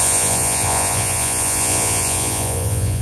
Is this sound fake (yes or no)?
yes